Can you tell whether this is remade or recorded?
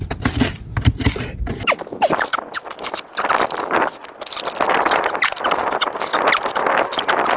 recorded